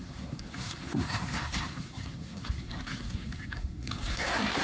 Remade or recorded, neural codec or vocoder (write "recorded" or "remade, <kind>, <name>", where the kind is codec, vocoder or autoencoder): remade, codec, SNAC